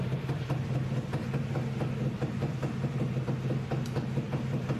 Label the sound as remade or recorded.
recorded